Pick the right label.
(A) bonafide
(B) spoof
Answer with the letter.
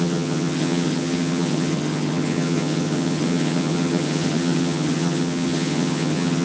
B